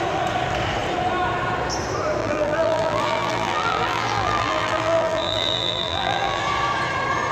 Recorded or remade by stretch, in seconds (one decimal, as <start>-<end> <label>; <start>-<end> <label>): 0.0-2.2 recorded; 2.2-6.4 remade; 6.4-7.3 recorded